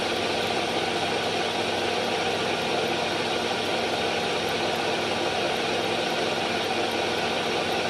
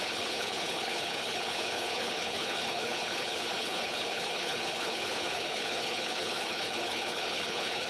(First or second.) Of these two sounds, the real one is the first